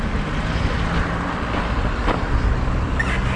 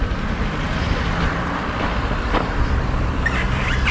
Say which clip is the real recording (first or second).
first